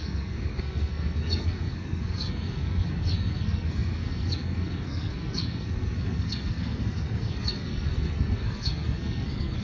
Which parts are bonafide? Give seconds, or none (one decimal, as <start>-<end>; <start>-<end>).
none